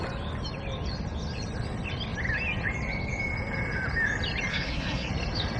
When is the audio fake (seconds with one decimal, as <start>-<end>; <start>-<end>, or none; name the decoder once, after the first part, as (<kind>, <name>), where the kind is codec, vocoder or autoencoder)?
4.5-5.1 (codec, SNAC)